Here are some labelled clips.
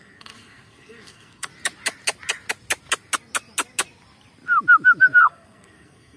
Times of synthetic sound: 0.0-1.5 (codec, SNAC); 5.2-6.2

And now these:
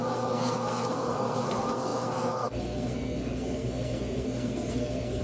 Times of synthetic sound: 0.0-5.2 (codec, SNAC)

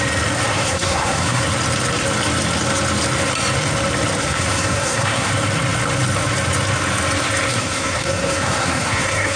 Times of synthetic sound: 0.5-1.4 (codec, SNAC); 4.2-5.3; 7.5-9.4

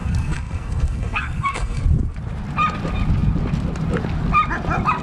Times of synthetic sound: 0.0-1.8 (codec, SNAC)

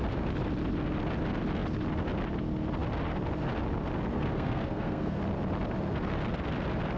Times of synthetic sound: 4.1-5.2 (codec, SNAC)

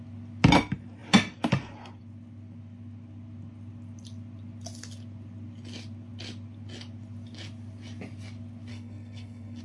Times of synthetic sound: 8.7-9.6 (codec, SNAC)